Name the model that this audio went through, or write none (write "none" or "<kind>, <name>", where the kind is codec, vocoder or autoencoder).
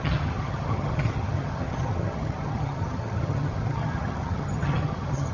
vocoder, HiFi-GAN